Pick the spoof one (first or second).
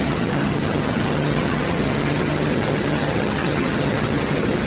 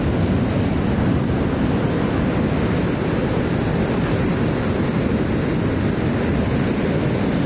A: first